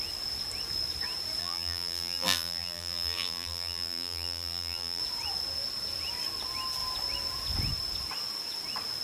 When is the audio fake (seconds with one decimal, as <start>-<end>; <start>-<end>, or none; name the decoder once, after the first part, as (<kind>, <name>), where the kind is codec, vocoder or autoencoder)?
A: 1.4-5.0 (vocoder, BigVGAN v2)

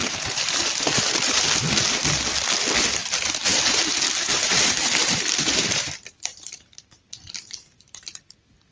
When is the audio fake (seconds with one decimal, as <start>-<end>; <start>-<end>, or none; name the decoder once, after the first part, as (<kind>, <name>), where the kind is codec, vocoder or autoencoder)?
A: 0.0-1.4 (vocoder, BigVGAN v2); 3.0-8.2

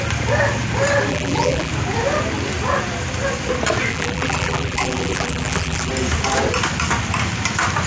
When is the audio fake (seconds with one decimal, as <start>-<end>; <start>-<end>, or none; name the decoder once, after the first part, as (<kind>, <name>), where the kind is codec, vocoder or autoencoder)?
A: 1.1-1.7 (vocoder, BigVGAN v2); 3.9-5.9

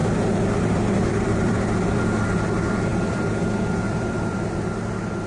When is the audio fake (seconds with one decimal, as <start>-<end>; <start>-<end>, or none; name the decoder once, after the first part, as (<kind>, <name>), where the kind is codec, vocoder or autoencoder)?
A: 0.0-2.0 (vocoder, BigVGAN v2); 2.9-4.6

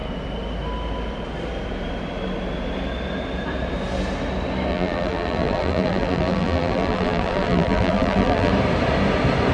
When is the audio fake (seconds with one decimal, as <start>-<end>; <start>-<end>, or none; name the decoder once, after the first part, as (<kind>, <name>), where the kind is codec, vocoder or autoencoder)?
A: 4.7-8.5 (vocoder, BigVGAN v2)

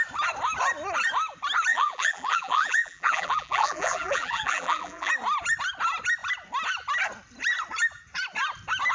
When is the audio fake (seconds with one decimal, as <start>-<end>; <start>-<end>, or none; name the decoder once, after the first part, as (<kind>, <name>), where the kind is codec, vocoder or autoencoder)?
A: 1.7-5.1 (vocoder, BigVGAN v2)